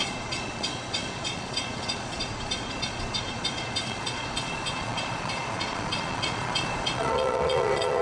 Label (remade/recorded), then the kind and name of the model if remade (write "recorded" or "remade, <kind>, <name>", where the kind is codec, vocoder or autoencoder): remade, vocoder, Vocos